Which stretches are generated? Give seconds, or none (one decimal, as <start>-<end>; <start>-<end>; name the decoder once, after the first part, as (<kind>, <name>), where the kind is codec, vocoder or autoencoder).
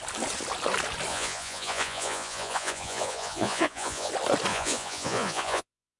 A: 1.1-4.1 (vocoder, Vocos); 4.5-6.0